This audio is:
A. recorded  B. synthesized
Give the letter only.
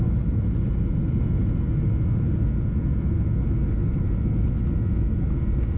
A